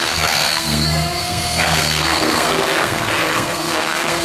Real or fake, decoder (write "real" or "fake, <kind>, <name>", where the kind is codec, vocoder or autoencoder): fake, codec, SNAC